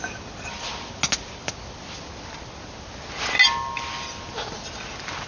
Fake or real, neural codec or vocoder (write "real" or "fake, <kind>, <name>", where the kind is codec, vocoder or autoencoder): real